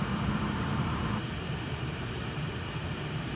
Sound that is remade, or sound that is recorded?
remade